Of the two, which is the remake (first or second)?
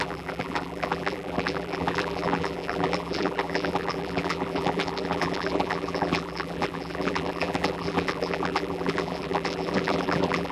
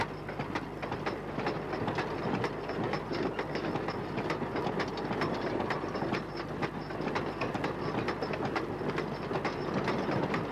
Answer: first